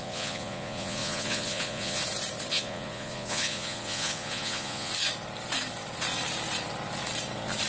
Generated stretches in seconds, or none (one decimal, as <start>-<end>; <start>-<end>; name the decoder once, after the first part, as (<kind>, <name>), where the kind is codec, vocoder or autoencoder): 0.0-2.0 (vocoder, Vocos); 2.5-4.9